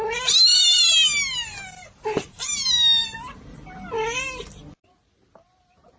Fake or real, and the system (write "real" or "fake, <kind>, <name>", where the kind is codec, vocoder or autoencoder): real